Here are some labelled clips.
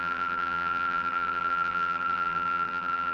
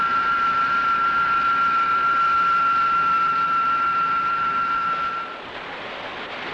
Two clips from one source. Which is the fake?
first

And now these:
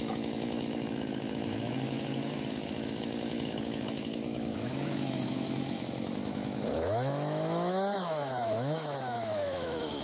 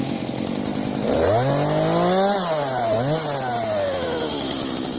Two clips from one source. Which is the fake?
first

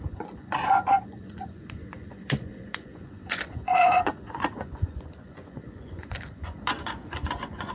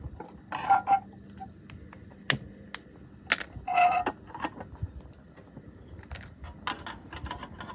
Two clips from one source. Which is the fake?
first